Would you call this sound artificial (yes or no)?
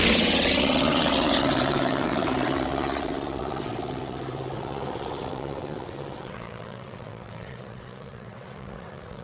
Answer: yes